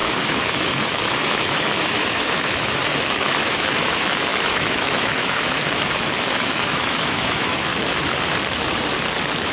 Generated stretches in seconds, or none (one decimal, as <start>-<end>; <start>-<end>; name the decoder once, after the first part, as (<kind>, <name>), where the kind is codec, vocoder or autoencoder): 0.0-7.7 (autoencoder, DAC-VAE)